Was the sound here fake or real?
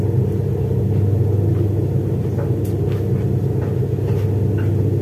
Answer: real